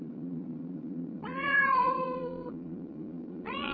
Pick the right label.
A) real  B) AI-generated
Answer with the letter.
B